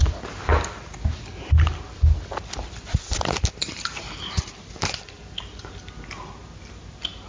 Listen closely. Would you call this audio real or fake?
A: real